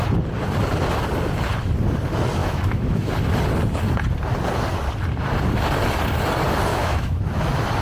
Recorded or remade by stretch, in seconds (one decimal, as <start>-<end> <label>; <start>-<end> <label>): 0.0-2.4 recorded; 2.4-3.1 remade; 3.1-6.7 recorded; 6.7-7.2 remade; 7.2-7.8 recorded